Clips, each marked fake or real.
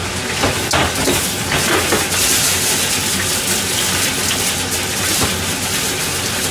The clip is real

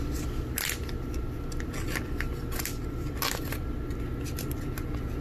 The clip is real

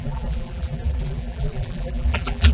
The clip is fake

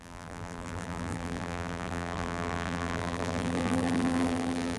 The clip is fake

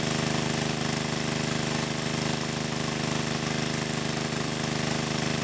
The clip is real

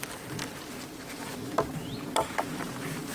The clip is real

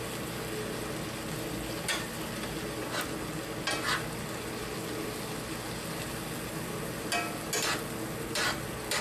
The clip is real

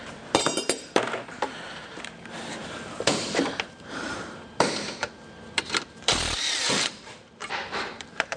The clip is fake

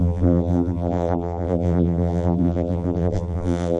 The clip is fake